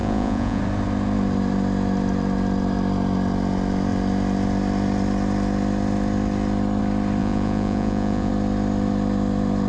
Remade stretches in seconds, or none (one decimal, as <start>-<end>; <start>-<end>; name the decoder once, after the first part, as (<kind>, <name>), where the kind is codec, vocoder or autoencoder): 0.0-0.6 (vocoder, Vocos); 7.2-8.3